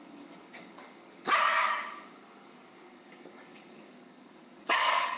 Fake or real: fake